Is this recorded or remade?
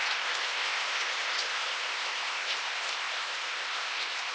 remade